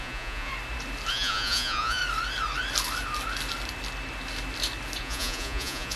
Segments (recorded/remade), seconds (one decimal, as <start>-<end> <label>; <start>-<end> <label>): 0.0-0.5 remade; 0.5-1.1 recorded; 1.1-2.0 remade; 2.0-5.0 recorded; 5.0-6.0 remade